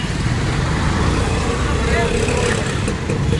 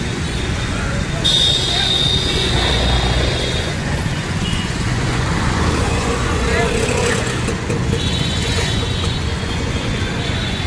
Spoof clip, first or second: second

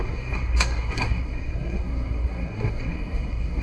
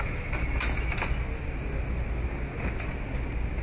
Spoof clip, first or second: first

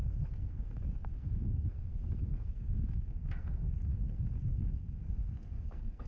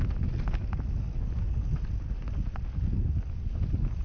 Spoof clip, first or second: first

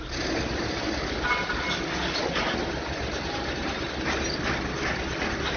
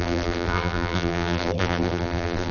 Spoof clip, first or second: second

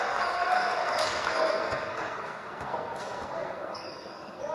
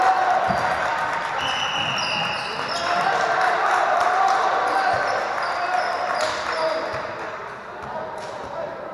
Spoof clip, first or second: first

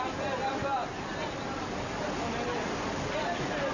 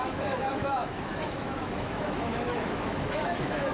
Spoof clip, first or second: second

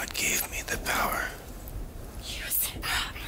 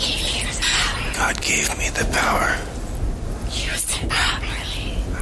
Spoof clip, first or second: first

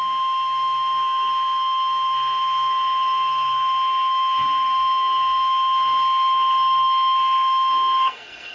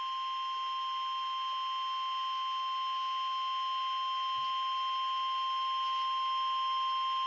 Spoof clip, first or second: first